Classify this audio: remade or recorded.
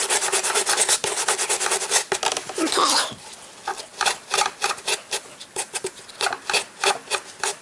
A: recorded